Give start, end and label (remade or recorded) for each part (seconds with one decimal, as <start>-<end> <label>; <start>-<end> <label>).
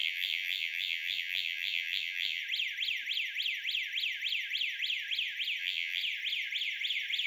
0.0-2.4 remade; 2.4-5.6 recorded; 5.6-6.0 remade; 6.0-7.3 recorded